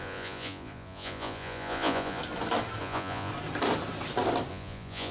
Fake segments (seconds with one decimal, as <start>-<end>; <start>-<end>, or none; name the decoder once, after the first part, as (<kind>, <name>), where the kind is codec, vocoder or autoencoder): 0.0-2.2 (vocoder, Vocos); 2.8-3.3; 4.5-5.1

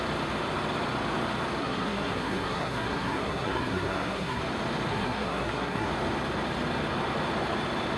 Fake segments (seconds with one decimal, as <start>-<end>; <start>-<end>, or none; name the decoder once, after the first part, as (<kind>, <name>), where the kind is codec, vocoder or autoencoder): 1.6-4.4 (codec, SNAC); 4.9-5.9

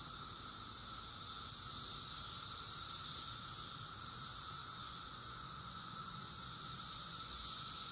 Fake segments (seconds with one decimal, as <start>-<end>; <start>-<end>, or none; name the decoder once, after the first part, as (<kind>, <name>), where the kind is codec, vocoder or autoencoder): 4.6-7.9 (vocoder, Vocos)

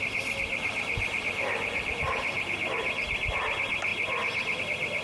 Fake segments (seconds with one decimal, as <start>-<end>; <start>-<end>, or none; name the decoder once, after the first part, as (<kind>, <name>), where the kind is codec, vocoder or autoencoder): 0.5-3.5 (vocoder, BigVGAN v2)

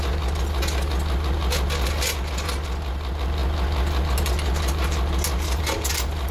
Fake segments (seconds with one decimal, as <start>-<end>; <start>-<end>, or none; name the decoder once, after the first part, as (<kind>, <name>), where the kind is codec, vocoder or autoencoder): none

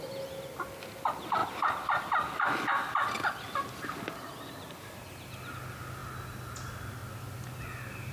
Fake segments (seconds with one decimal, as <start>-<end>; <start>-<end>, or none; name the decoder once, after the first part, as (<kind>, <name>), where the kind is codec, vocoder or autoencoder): 1.4-2.0 (vocoder, BigVGAN v2)

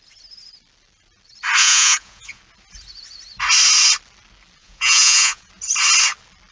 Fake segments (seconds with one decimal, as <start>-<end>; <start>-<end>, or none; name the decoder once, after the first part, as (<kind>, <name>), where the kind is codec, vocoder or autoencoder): 1.6-2.4 (vocoder, Vocos); 4.6-5.5